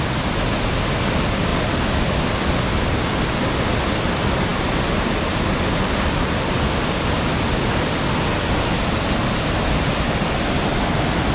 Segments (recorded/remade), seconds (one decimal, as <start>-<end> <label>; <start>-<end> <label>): 0.0-1.5 recorded; 1.5-2.5 remade; 2.5-11.3 recorded